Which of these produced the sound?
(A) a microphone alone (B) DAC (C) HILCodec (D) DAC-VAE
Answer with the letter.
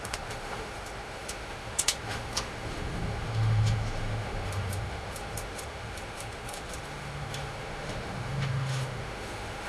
D